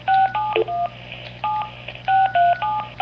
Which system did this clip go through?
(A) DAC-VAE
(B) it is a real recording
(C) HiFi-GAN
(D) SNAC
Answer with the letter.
B